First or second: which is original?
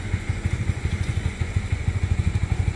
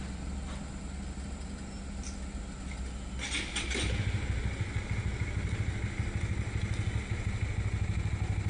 second